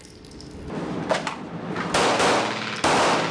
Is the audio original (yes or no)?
yes